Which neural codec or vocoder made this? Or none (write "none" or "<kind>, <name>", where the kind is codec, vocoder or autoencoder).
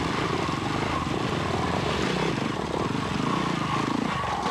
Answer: none